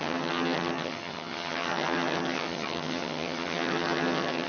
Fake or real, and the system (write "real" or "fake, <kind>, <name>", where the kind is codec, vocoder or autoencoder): fake, vocoder, HiFi-GAN